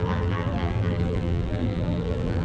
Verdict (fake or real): fake